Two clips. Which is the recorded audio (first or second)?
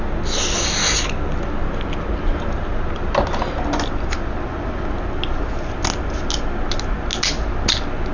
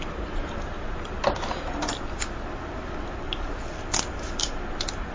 first